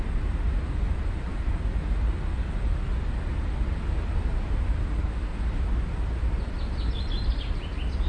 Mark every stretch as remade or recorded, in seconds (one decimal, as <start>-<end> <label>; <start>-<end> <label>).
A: 0.0-8.1 recorded